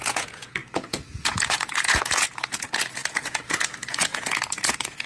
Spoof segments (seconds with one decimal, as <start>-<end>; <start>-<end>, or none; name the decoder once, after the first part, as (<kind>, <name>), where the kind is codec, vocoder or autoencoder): 0.0-5.1 (vocoder, Vocos)